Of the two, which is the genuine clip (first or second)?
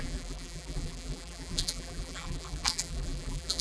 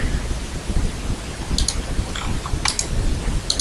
second